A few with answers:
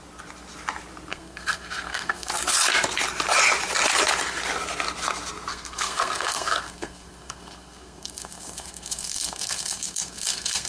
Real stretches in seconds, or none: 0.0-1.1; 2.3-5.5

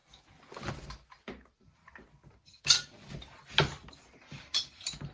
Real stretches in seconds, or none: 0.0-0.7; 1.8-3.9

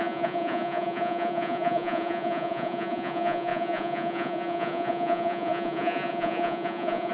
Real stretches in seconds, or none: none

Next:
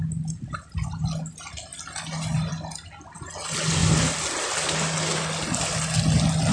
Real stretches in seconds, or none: 0.0-6.5

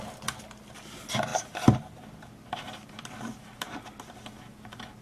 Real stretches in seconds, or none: 0.0-5.0